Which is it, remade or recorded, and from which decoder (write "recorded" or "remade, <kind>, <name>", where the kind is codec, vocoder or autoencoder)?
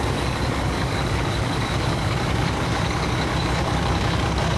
remade, codec, DAC